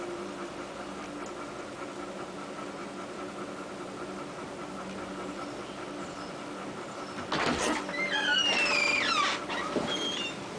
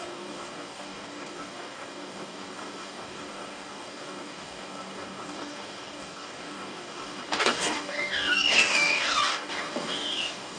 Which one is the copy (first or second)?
second